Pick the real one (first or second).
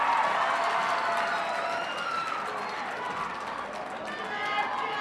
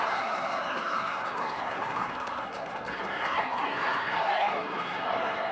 first